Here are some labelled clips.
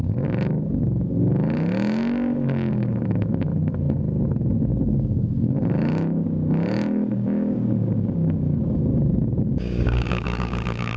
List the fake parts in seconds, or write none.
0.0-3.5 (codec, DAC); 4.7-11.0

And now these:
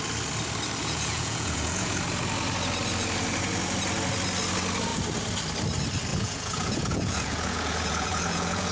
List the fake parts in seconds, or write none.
0.8-2.0 (vocoder, Vocos); 6.1-8.7

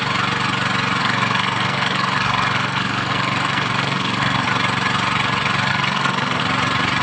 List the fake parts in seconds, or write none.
1.0-4.5 (codec, SNAC); 5.7-6.4

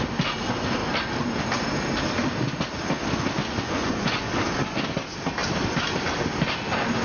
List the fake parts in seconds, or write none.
3.4-4.3 (vocoder, Vocos)

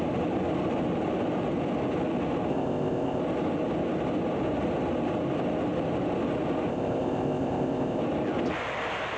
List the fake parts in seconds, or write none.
2.5-3.2 (codec, ZipCodec); 6.7-8.0